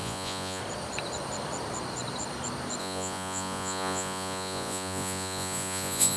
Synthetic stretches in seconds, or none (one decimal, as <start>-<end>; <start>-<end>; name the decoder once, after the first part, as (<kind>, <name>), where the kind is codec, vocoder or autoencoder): 0.0-0.6 (vocoder, Vocos); 2.8-6.2